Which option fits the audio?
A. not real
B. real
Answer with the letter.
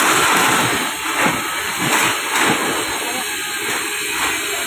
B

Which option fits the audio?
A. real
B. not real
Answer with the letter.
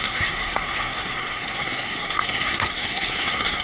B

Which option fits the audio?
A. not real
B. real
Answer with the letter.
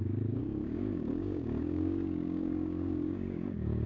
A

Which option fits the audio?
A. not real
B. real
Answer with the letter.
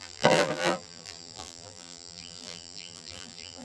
A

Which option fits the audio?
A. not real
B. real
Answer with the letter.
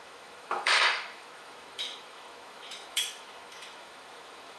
A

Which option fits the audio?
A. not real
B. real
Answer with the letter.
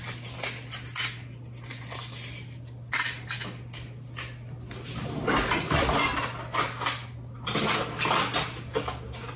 B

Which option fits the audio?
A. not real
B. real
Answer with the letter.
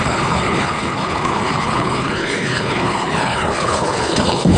A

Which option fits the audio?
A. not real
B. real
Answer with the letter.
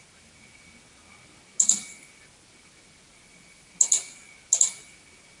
B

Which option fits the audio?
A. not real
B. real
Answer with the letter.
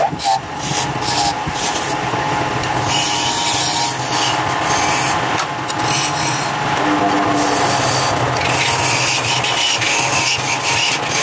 B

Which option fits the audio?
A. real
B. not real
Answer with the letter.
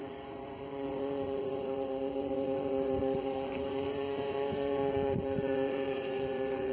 B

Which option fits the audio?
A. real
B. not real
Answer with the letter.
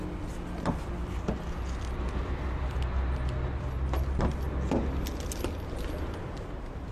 A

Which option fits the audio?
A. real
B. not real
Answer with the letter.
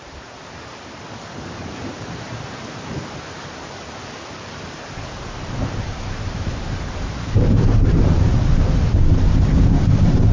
B